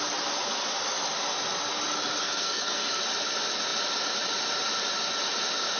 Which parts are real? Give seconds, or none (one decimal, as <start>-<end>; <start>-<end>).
0.0-2.2; 3.0-5.8